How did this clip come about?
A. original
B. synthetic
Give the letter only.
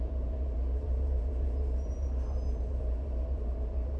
B